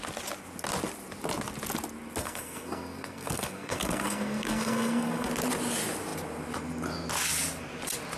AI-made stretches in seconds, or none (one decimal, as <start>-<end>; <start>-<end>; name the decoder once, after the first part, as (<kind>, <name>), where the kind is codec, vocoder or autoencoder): 2.2-5.3 (codec, SNAC)